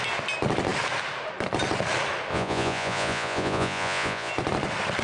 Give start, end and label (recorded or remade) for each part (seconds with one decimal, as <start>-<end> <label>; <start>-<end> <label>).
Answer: 0.0-2.3 recorded; 2.3-4.3 remade; 4.3-5.0 recorded